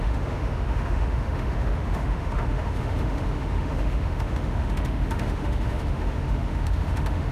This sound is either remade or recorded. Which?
remade